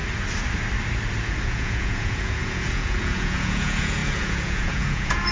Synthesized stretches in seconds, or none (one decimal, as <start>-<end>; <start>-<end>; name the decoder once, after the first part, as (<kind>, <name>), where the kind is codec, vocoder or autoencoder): 1.2-5.3 (vocoder, Vocos)